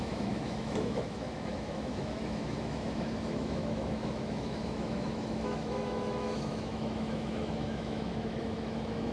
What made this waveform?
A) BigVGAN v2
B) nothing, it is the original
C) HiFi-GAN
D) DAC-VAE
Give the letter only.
D